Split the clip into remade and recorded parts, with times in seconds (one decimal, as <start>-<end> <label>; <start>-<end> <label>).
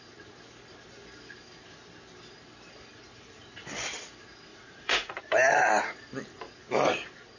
0.0-4.5 recorded; 4.5-5.2 remade; 5.2-7.4 recorded